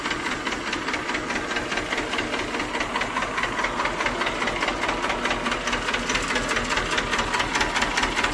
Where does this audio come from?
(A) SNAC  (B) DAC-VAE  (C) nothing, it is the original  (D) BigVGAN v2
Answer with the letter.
C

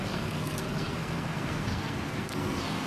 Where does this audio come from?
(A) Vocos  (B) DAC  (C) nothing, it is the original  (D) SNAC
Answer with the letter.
D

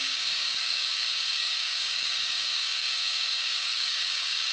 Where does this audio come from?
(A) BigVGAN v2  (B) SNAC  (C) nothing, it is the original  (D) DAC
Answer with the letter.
D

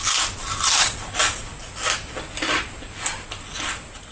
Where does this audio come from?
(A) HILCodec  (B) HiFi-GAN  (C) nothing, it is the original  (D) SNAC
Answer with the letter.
C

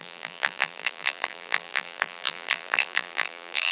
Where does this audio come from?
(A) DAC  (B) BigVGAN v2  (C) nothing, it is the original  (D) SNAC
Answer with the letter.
B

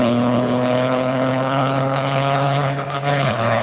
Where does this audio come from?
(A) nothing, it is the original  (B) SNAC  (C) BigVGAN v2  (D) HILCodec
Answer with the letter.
D